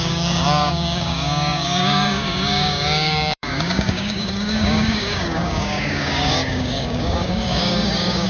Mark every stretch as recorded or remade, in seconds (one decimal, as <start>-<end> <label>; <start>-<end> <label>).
0.0-8.3 remade